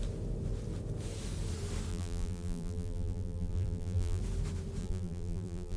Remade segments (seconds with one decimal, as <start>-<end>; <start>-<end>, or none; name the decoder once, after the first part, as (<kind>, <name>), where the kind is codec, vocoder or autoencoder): 1.9-4.2 (vocoder, BigVGAN v2); 4.8-5.8